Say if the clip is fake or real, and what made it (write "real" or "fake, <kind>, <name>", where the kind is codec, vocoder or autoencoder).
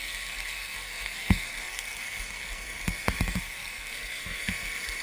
fake, codec, SNAC